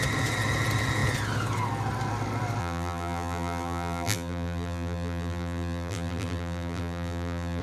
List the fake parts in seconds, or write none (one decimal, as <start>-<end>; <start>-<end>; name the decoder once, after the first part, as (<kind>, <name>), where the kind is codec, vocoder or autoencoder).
2.6-7.6 (vocoder, BigVGAN v2)